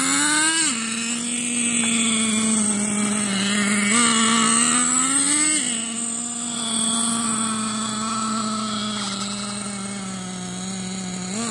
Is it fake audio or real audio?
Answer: real